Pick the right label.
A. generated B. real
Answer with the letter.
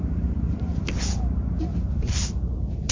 B